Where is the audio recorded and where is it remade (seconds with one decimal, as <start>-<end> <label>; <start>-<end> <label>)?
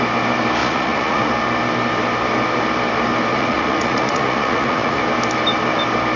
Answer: 0.0-0.6 recorded; 0.6-1.3 remade; 1.3-3.3 recorded; 3.3-5.0 remade; 5.0-6.2 recorded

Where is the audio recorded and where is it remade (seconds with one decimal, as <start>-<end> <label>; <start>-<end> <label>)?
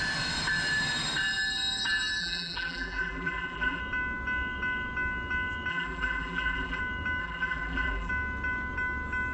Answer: 0.0-2.2 recorded; 2.2-3.8 remade; 3.8-5.7 recorded; 5.7-6.8 remade; 6.8-7.2 recorded; 7.2-8.1 remade; 8.1-9.3 recorded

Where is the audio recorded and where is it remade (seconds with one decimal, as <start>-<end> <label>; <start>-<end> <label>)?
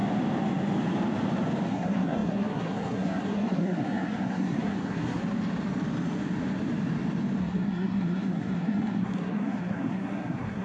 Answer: 0.0-1.7 recorded; 1.7-5.2 remade; 5.2-7.4 recorded; 7.4-10.6 remade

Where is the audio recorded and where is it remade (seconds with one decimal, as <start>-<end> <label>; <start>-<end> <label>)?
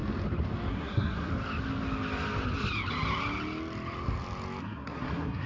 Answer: 0.0-0.7 recorded; 0.7-1.3 remade; 1.3-4.6 recorded; 4.6-5.5 remade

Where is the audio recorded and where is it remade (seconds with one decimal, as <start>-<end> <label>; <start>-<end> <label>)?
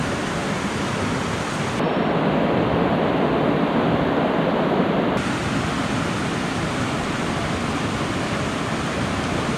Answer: 0.0-9.6 recorded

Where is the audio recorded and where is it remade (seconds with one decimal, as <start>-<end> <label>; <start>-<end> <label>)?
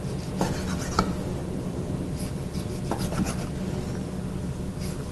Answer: 0.0-5.1 recorded